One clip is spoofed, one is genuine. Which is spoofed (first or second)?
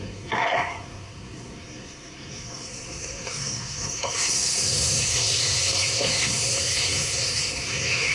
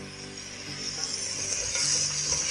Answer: first